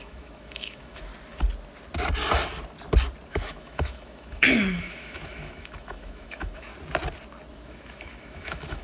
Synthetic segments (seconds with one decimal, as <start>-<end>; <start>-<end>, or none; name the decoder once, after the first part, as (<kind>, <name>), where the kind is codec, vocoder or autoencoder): 0.0-1.1 (autoencoder, DAC-VAE); 3.3-6.7; 7.5-8.8